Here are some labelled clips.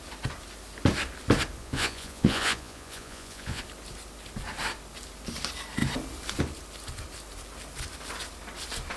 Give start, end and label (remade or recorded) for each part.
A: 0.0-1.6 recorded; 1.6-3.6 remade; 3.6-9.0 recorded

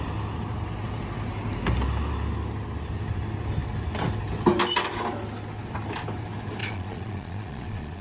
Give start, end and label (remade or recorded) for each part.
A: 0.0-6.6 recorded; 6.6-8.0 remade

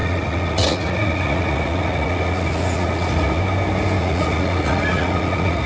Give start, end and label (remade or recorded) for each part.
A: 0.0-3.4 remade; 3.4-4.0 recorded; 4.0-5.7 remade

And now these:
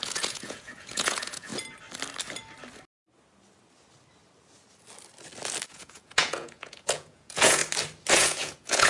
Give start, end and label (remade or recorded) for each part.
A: 0.0-1.5 remade; 1.5-5.7 recorded; 5.7-7.6 remade; 7.6-8.1 recorded; 8.1-8.9 remade

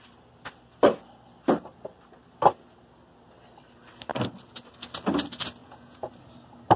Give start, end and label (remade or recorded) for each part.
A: 0.0-5.6 recorded; 5.6-6.1 remade; 6.1-6.8 recorded

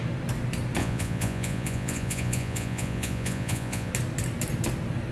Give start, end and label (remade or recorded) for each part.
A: 0.0-0.8 recorded; 0.8-3.9 remade; 3.9-5.1 recorded